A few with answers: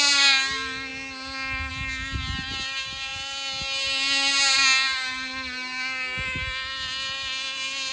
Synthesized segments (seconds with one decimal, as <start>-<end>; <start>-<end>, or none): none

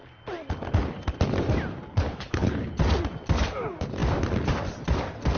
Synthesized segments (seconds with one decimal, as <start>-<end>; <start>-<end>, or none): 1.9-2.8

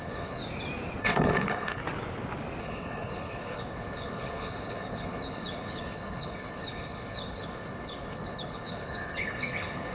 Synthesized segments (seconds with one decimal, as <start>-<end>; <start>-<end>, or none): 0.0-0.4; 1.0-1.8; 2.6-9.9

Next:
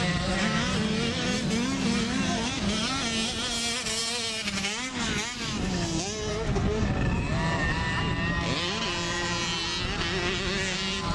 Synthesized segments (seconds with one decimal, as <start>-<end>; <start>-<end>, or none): none

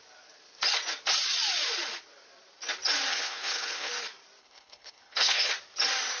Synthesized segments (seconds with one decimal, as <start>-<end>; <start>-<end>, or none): 3.1-3.9; 4.4-5.5